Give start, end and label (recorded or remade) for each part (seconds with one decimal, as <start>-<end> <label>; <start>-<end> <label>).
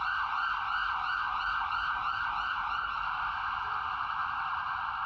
0.0-5.1 recorded